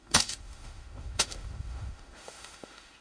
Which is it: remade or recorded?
remade